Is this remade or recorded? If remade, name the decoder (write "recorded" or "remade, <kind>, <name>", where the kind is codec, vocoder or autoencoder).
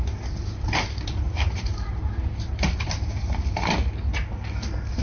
recorded